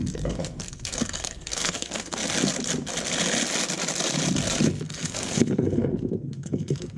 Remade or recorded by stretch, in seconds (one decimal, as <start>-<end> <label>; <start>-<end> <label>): 0.0-2.2 remade; 2.2-4.7 recorded; 4.7-7.0 remade

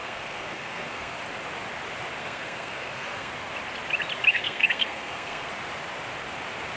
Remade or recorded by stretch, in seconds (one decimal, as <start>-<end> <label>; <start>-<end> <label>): 0.0-1.2 remade; 1.2-2.2 recorded; 2.2-3.3 remade; 3.3-4.3 recorded; 4.3-5.5 remade; 5.5-6.8 recorded

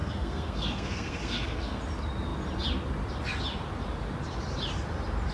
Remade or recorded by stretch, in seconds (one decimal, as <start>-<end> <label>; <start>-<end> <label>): 0.0-1.8 remade; 1.8-5.3 recorded

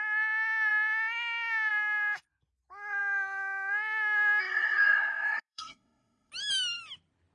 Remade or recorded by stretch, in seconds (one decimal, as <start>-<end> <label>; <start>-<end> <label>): 0.0-4.4 recorded; 4.4-6.3 remade; 6.3-7.3 recorded

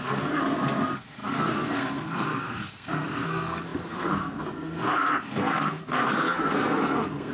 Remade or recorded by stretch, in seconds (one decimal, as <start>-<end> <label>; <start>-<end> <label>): 0.0-7.3 remade

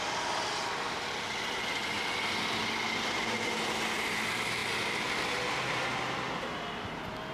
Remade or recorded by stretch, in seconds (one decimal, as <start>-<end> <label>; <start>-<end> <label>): 0.0-7.3 recorded

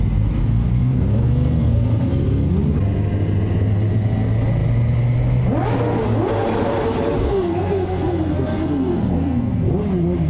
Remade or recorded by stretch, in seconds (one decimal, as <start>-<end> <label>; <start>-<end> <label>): 0.0-0.4 recorded; 0.4-2.5 remade; 2.5-7.2 recorded; 7.2-9.7 remade; 9.7-10.3 recorded

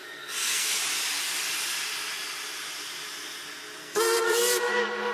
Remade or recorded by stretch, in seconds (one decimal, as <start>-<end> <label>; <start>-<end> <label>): 0.0-0.8 remade; 0.8-3.8 recorded; 3.8-4.4 remade; 4.4-5.1 recorded